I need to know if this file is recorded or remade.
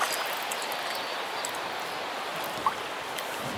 recorded